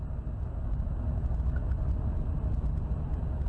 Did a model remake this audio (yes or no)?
no